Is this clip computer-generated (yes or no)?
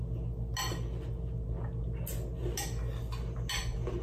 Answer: no